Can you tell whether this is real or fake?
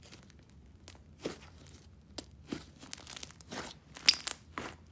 real